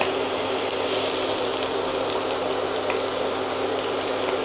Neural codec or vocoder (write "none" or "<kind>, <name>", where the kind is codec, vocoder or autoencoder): none